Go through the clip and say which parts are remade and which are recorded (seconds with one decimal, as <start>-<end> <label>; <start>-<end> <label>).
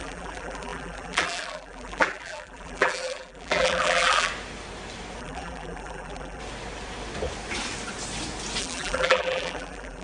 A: 0.0-4.3 remade; 4.3-5.2 recorded; 5.2-6.4 remade; 6.4-8.6 recorded; 8.6-10.0 remade